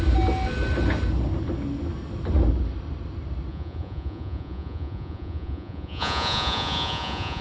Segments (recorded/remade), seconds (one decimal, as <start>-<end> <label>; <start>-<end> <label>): 0.0-3.5 recorded; 3.5-7.4 remade